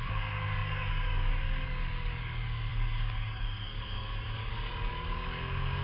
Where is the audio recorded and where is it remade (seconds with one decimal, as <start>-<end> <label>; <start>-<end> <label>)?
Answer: 0.0-5.8 remade